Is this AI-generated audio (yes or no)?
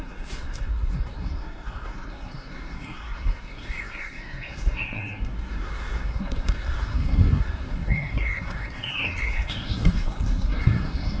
yes